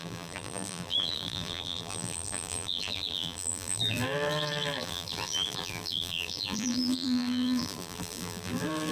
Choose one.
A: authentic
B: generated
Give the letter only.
B